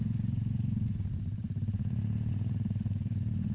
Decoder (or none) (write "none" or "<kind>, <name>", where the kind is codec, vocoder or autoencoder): none